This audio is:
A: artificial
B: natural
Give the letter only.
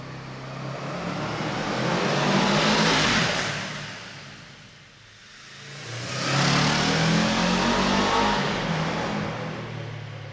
B